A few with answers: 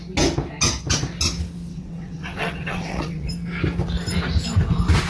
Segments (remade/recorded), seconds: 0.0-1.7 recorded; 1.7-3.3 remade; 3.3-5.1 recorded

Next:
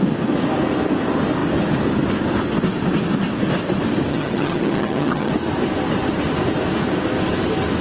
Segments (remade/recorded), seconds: 0.0-4.1 recorded; 4.1-5.3 remade; 5.3-7.8 recorded